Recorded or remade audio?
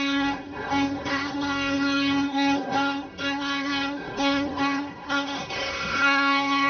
remade